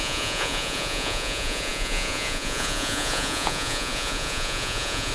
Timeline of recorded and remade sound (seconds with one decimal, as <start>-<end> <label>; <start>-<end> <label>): 0.0-5.1 remade